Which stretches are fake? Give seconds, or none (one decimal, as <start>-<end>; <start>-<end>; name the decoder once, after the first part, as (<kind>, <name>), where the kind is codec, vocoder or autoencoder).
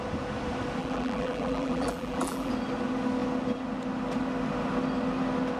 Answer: 0.8-2.5 (vocoder, BigVGAN v2)